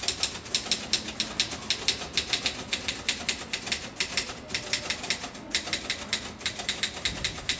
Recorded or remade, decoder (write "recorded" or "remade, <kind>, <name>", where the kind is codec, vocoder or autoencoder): recorded